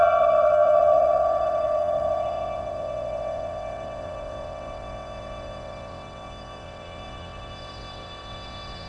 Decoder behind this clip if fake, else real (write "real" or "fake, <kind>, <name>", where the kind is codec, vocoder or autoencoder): fake, vocoder, WaveNeXt